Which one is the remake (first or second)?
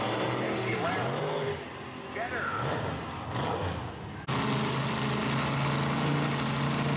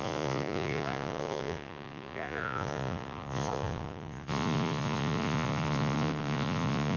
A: second